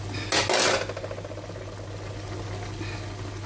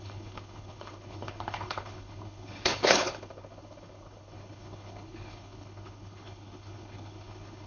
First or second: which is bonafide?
first